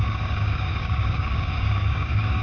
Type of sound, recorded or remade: remade